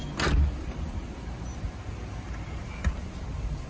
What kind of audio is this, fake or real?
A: real